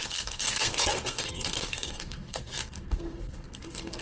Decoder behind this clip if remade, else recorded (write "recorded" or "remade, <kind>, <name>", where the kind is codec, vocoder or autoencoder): remade, codec, SNAC